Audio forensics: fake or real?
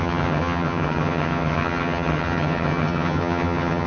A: fake